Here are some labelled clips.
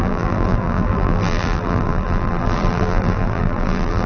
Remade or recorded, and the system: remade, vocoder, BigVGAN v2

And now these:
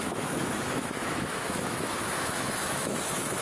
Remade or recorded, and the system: remade, autoencoder, DAC-VAE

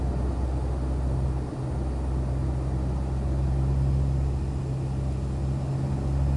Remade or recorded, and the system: recorded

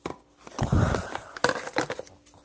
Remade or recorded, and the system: recorded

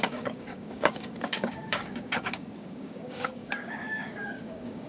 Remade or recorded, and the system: remade, codec, DAC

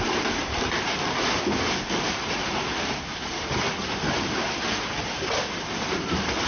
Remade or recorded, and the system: recorded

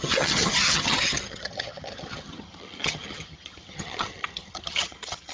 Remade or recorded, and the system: remade, vocoder, HiFi-GAN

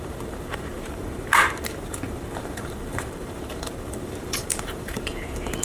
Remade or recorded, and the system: remade, vocoder, BigVGAN v2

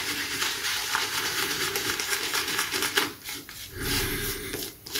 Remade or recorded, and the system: remade, vocoder, BigVGAN v2